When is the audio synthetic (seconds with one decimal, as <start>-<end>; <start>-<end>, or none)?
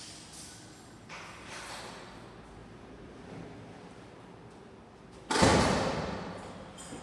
none